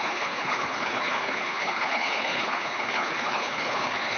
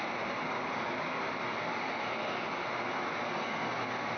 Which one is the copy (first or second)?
first